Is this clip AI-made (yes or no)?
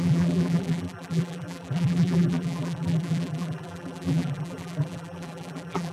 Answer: yes